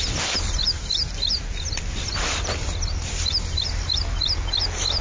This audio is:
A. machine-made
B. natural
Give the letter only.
B